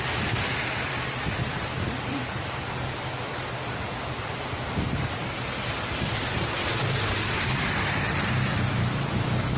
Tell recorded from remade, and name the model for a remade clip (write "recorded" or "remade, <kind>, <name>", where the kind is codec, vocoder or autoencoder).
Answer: recorded